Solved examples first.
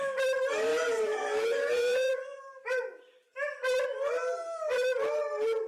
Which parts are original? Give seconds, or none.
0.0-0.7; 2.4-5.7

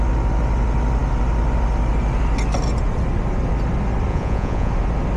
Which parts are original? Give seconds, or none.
0.0-4.1; 4.7-5.2

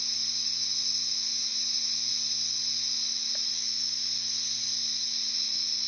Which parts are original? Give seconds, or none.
0.0-1.5; 2.1-5.9